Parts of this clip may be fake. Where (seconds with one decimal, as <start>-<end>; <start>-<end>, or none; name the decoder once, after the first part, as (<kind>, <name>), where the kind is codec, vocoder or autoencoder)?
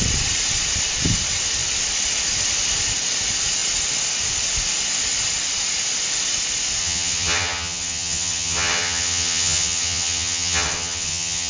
6.8-11.5 (vocoder, HiFi-GAN)